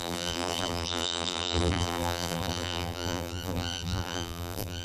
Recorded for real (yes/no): no